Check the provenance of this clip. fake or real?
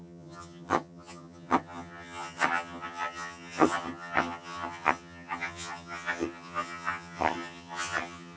fake